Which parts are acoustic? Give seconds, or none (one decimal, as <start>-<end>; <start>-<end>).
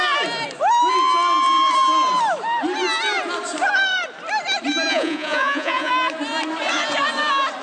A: 0.0-4.9; 5.9-7.6